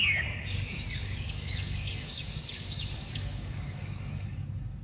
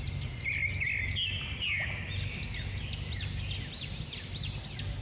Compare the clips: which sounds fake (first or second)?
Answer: first